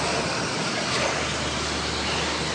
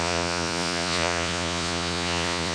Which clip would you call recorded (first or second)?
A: first